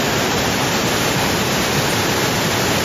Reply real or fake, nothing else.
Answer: fake